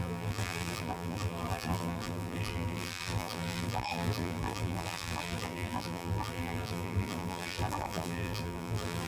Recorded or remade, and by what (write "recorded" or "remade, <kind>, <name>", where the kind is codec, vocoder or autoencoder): remade, vocoder, BigVGAN v2